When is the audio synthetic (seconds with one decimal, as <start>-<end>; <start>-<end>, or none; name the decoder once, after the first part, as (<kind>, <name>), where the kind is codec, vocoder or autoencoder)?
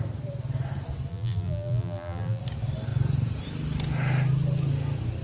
1.1-2.4 (vocoder, BigVGAN v2)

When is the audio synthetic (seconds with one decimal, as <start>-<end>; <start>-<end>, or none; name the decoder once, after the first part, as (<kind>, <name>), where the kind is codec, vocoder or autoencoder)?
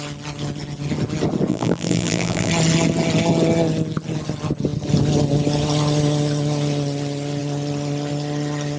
1.5-2.5 (vocoder, BigVGAN v2)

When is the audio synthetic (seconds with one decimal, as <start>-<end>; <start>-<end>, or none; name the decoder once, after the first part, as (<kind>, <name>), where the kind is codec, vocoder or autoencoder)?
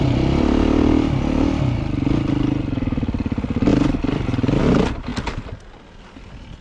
3.7-4.6 (vocoder, BigVGAN v2)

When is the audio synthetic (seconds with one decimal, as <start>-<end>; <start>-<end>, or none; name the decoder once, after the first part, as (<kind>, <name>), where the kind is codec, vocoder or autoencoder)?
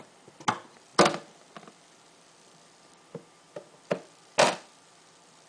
none